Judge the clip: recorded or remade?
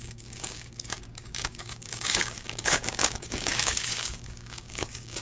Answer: remade